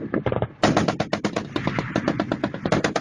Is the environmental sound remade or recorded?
recorded